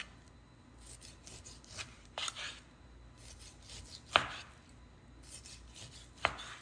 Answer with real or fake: real